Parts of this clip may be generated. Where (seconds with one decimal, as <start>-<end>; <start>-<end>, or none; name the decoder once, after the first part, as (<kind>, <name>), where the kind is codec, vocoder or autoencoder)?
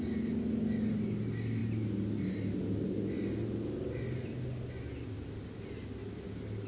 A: none